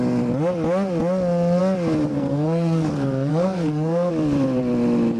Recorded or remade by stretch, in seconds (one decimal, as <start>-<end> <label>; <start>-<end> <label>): 0.0-2.1 recorded; 2.1-2.9 remade; 2.9-3.3 recorded; 3.3-4.1 remade; 4.1-5.2 recorded